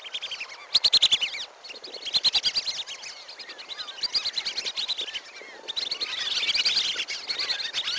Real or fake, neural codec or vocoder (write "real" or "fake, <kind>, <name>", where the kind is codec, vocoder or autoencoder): real